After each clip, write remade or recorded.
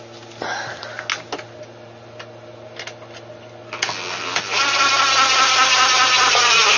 recorded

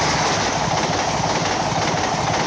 recorded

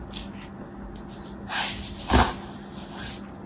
recorded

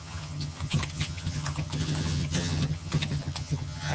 remade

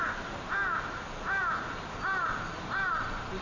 recorded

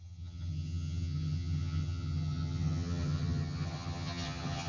remade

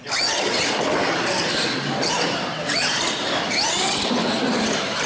recorded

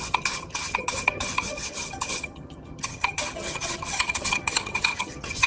remade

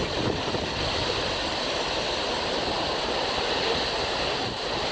recorded